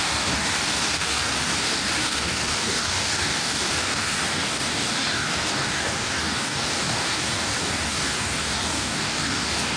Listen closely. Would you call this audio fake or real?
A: fake